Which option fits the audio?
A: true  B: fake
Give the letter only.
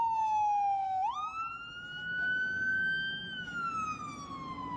A